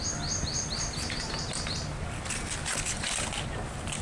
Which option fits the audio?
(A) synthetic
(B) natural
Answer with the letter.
B